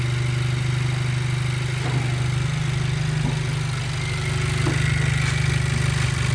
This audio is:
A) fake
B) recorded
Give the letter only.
B